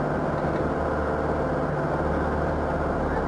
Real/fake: real